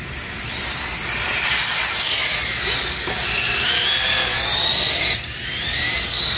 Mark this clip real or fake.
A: real